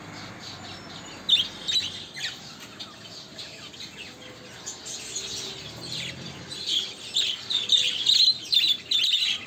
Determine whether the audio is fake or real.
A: real